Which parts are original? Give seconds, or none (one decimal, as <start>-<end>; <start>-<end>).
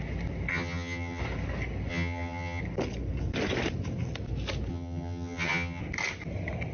0.0-0.5; 1.2-1.9; 2.6-4.7; 5.8-6.7